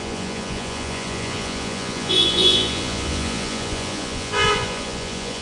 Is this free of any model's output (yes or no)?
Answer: no